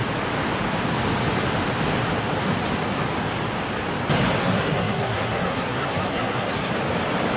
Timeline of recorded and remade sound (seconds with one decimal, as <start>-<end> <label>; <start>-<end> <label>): 0.0-4.4 recorded; 4.4-6.7 remade; 6.7-7.4 recorded